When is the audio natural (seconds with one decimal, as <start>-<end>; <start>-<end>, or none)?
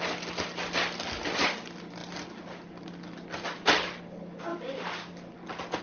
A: 0.0-5.8